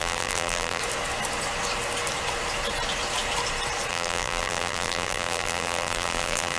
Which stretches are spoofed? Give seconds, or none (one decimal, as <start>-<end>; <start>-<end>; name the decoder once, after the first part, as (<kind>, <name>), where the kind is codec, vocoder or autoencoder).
0.0-0.8 (vocoder, BigVGAN v2); 3.9-6.6